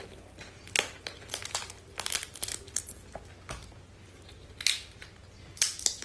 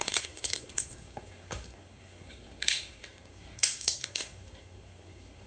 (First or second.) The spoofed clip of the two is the second